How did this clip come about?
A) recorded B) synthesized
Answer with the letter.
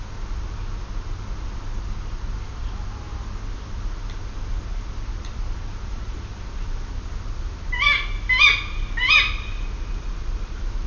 A